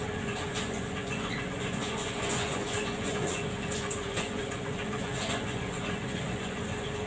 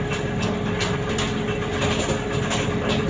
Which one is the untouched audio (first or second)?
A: second